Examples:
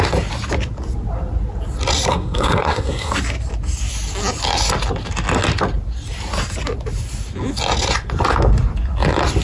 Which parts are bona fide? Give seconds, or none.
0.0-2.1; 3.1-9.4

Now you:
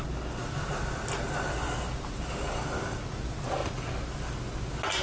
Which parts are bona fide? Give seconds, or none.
0.0-5.0